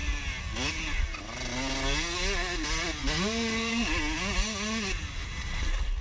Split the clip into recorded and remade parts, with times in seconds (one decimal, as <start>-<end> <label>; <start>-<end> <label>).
0.0-6.0 recorded